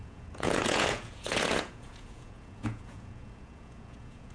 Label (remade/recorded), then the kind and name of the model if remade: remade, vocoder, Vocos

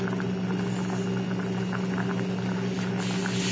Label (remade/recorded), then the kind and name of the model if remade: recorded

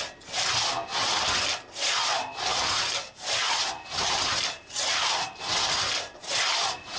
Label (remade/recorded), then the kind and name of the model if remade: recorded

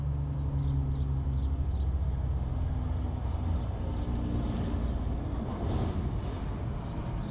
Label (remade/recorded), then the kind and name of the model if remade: recorded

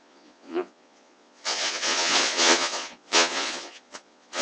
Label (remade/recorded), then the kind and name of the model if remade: remade, vocoder, Vocos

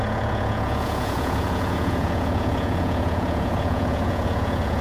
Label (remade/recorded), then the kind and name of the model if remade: remade, vocoder, Vocos